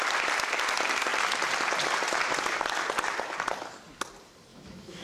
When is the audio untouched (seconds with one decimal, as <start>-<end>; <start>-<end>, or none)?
0.0-4.5